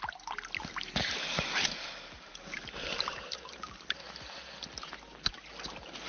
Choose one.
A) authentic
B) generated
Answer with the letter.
A